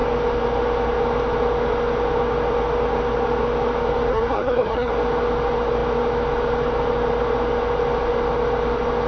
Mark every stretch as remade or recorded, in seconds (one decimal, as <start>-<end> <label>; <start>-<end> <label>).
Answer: 0.0-4.1 recorded; 4.1-4.9 remade; 4.9-9.1 recorded